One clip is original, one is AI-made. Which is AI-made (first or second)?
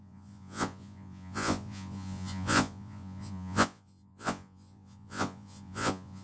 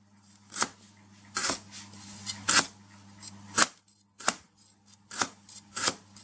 first